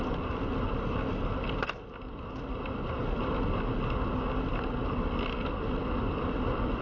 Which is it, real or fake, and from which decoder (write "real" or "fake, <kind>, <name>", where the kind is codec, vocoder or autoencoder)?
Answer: real